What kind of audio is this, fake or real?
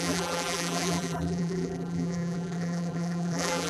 fake